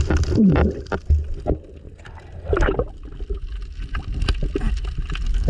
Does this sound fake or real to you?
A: real